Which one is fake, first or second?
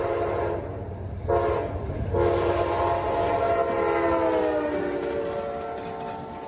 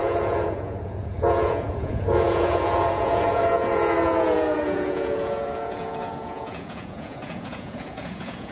second